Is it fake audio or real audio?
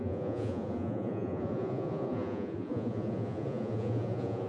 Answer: fake